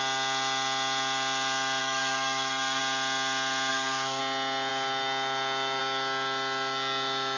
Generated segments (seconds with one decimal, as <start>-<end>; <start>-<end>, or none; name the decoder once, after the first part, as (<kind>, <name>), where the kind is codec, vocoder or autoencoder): 1.8-2.8 (codec, SNAC); 3.7-4.2